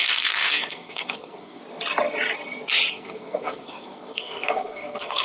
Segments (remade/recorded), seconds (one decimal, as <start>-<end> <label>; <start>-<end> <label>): 0.0-1.6 remade; 1.6-2.9 recorded; 2.9-5.2 remade